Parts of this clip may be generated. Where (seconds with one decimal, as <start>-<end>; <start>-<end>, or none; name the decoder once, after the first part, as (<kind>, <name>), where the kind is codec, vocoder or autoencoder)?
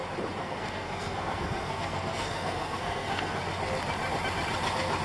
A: 0.4-3.4 (codec, SNAC)